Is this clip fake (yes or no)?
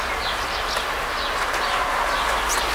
no